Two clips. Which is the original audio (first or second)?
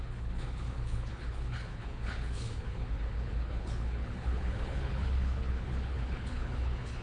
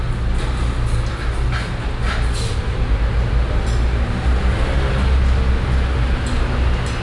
second